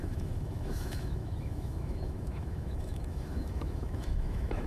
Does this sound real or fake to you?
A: fake